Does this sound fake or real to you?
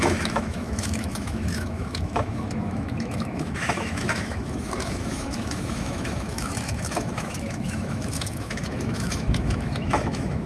fake